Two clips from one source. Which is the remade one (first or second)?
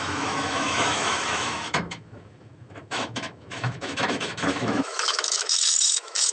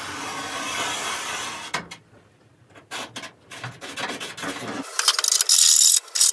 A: first